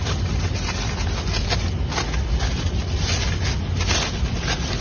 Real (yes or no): yes